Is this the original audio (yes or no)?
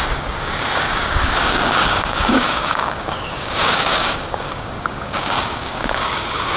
no